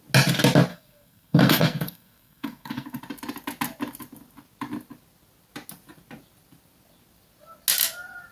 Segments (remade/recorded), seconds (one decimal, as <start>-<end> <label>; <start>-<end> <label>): 0.0-0.7 recorded; 0.7-3.0 remade; 3.0-8.3 recorded